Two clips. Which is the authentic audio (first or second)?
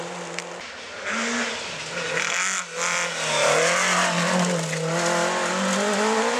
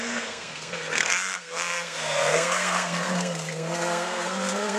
first